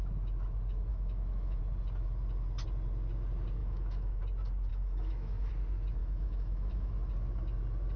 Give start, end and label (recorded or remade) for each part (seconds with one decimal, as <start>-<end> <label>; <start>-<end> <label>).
0.0-0.9 recorded; 0.9-1.6 remade; 1.6-3.6 recorded; 3.6-4.2 remade; 4.2-4.7 recorded; 4.7-5.5 remade; 5.5-6.0 recorded; 6.0-6.9 remade; 6.9-8.0 recorded